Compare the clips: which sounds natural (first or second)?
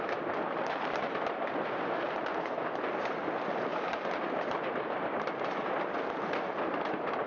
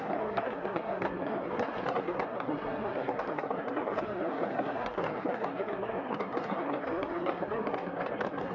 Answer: first